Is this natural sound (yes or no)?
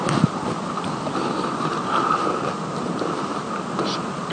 yes